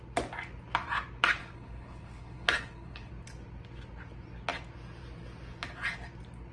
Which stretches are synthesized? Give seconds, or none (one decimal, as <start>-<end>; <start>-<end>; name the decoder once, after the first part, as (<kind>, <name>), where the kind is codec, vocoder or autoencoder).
1.4-3.1 (codec, HILCodec)